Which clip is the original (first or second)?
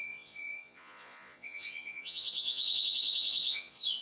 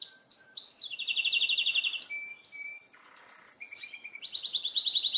second